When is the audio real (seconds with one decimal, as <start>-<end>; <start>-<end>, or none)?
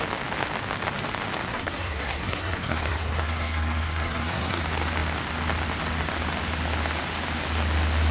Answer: 0.0-1.5; 4.6-8.1